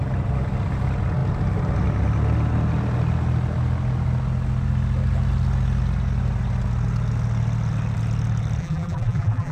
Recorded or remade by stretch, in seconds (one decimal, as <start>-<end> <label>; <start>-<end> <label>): 0.0-8.6 recorded; 8.6-9.5 remade